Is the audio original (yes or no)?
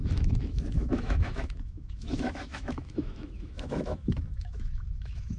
no